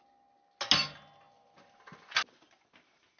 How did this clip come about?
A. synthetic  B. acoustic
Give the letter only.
B